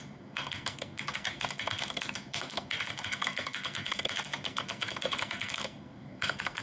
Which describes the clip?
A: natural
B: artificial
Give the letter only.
B